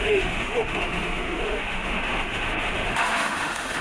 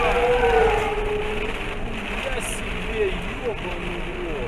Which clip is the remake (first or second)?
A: first